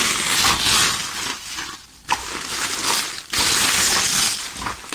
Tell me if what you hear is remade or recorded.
recorded